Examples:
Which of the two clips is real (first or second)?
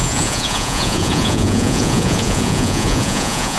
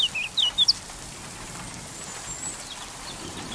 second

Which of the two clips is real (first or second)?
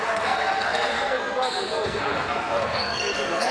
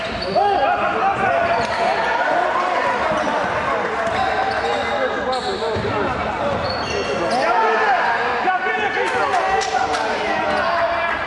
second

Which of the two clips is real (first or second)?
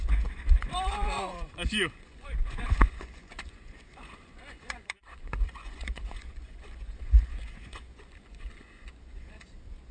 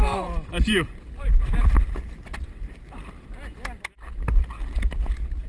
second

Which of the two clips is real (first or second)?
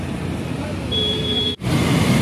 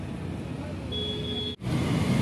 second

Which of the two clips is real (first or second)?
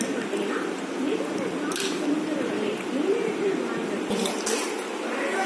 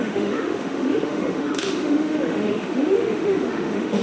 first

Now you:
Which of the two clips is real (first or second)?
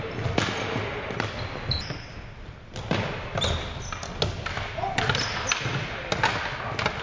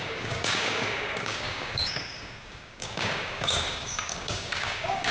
first